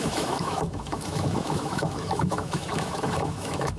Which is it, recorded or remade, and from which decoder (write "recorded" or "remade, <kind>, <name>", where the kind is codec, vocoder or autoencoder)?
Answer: remade, autoencoder, DAC-VAE